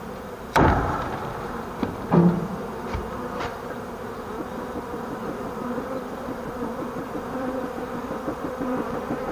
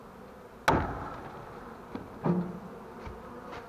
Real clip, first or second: second